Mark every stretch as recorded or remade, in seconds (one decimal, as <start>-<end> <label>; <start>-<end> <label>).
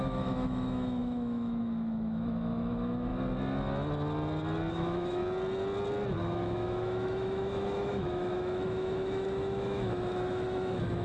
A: 0.0-3.1 remade; 3.1-4.7 recorded; 4.7-5.2 remade; 5.2-6.2 recorded; 6.2-11.0 remade